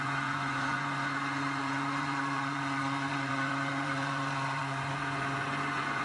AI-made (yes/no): yes